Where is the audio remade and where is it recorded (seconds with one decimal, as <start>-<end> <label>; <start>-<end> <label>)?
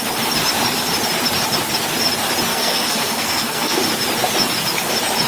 0.0-2.5 recorded; 2.5-3.8 remade; 3.8-5.3 recorded